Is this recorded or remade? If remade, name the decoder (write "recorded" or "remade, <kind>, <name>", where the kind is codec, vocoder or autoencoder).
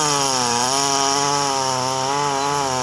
recorded